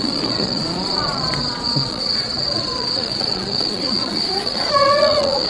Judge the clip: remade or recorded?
remade